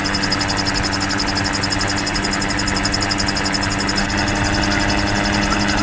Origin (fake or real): real